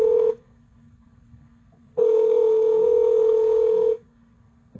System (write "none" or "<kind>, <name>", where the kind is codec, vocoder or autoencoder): codec, SNAC